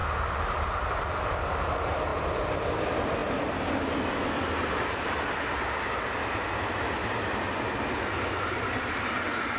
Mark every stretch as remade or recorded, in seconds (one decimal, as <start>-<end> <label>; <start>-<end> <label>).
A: 0.0-9.6 recorded